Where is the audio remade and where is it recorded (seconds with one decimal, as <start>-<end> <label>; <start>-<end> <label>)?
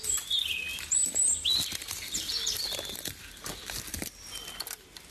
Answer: 0.0-0.7 recorded; 0.7-3.8 remade; 3.8-5.1 recorded